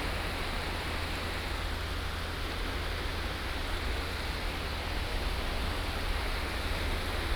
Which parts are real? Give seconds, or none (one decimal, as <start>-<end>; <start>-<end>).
0.0-7.4